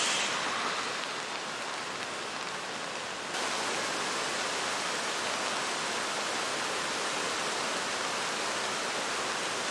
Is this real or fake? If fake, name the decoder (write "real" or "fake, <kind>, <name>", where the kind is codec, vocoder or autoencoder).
real